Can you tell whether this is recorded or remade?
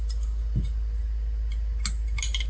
recorded